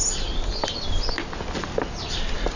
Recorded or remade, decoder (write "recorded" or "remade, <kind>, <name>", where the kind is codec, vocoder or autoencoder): recorded